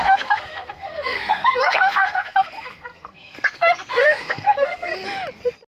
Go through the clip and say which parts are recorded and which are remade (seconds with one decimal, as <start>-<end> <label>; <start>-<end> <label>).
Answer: 0.0-4.9 remade; 4.9-5.8 recorded